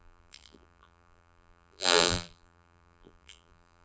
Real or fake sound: fake